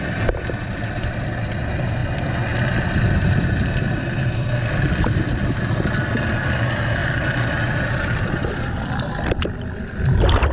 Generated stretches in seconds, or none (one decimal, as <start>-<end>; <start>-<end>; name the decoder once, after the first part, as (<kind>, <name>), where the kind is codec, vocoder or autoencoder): none

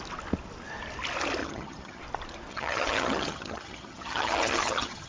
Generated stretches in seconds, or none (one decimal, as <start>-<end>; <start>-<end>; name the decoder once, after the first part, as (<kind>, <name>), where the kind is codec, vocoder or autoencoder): 1.4-2.0 (vocoder, HiFi-GAN); 2.5-5.1

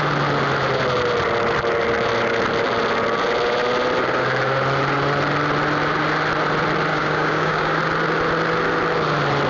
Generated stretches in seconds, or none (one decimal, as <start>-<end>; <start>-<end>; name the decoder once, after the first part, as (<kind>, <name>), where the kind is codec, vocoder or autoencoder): 6.9-7.8 (codec, DAC)

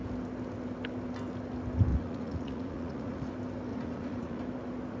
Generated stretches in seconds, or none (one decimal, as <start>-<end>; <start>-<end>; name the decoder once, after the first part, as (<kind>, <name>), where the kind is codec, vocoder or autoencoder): 1.9-3.3 (vocoder, Vocos); 3.7-4.4

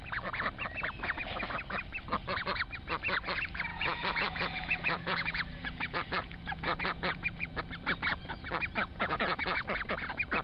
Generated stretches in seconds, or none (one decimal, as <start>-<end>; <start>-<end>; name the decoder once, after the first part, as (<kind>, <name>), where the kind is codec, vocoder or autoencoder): 3.7-7.6 (vocoder, Vocos); 8.9-9.6

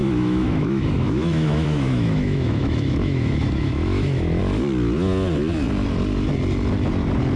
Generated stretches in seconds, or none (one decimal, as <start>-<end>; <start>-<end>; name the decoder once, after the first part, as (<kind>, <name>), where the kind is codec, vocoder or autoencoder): 0.0-4.4 (autoencoder, DAC-VAE)

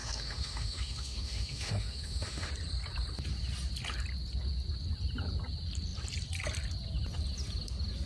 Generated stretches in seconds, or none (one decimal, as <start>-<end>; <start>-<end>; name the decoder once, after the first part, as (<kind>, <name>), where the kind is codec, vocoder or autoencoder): 0.0-2.5 (autoencoder, DAC-VAE)

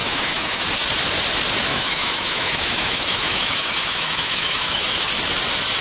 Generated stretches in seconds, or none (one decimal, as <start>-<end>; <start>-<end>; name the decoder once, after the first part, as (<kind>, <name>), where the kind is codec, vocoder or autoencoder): 0.0-0.6 (autoencoder, DAC-VAE); 1.7-5.1